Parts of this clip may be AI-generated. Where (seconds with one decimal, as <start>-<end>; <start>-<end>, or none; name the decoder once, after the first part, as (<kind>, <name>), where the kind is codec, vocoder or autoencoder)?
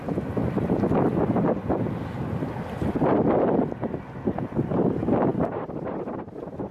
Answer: none